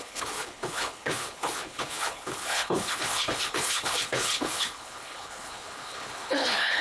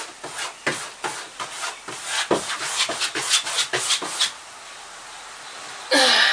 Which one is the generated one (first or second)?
first